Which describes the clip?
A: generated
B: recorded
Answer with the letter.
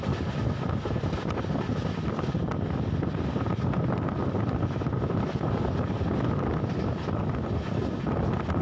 B